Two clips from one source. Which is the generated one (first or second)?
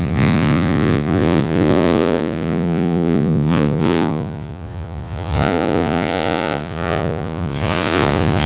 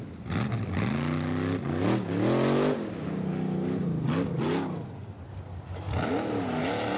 first